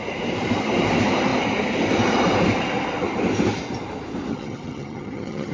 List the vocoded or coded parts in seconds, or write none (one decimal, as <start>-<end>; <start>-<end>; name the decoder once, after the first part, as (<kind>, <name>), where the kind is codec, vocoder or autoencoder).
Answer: 4.3-5.5 (vocoder, HiFi-GAN)